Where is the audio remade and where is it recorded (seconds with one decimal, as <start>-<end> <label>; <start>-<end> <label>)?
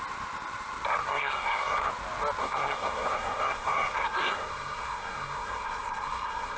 0.0-1.0 recorded; 1.0-1.9 remade; 1.9-2.4 recorded; 2.4-6.6 remade